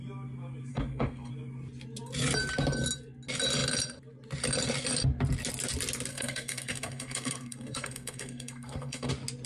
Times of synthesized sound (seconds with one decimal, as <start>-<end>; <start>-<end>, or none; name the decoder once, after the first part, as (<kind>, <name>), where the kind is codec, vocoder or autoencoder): 0.7-1.3 (codec, SNAC); 6.1-9.1